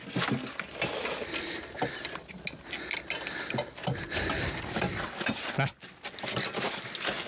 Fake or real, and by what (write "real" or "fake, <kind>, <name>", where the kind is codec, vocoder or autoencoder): real